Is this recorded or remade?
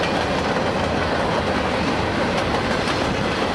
recorded